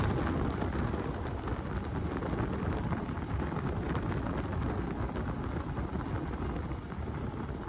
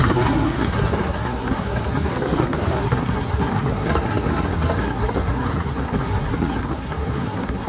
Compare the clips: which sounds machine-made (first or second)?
second